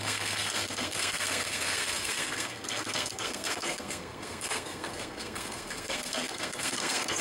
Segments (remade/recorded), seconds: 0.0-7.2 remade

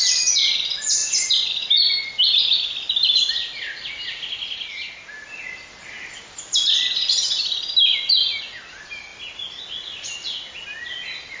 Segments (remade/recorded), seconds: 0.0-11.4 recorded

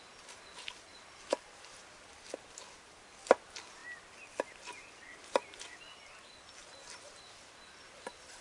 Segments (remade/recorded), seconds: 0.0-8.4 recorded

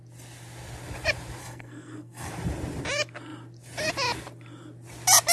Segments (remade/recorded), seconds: 0.0-1.4 recorded; 1.4-2.3 remade; 2.3-5.3 recorded

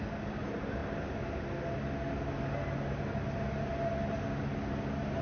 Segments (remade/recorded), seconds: 0.0-5.2 recorded

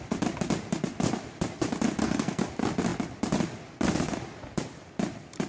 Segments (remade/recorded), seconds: 0.0-2.0 recorded; 2.0-2.5 remade; 2.5-5.5 recorded